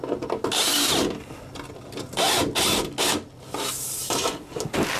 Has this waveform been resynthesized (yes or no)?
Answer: no